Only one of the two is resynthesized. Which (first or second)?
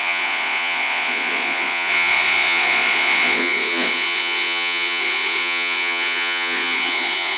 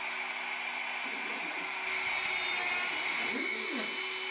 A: first